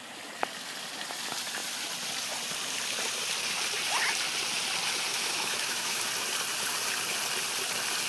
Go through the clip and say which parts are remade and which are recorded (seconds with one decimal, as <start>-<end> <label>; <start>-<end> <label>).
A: 0.0-5.1 recorded; 5.1-6.0 remade; 6.0-8.1 recorded